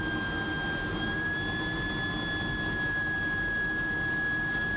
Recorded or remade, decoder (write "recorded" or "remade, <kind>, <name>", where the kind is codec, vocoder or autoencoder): recorded